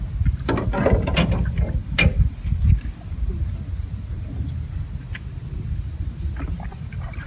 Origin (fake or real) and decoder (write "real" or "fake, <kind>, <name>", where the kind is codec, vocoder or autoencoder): real